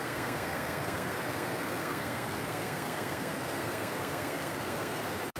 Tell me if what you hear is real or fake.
fake